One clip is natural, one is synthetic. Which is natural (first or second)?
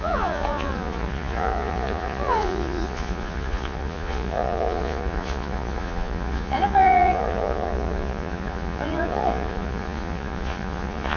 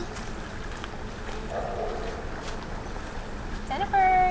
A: second